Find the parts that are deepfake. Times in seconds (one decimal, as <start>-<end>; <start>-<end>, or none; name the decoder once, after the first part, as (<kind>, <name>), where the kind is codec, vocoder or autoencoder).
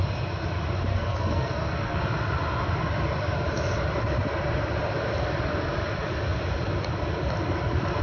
0.9-2.0 (codec, SNAC)